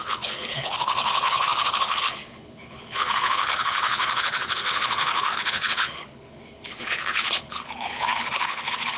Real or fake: fake